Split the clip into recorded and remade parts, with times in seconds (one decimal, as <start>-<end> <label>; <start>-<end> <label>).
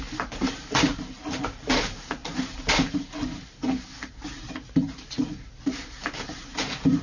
0.0-7.0 recorded